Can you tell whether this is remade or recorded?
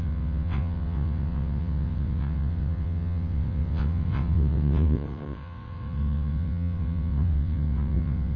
remade